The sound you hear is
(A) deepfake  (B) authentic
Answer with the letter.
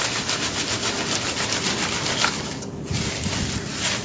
B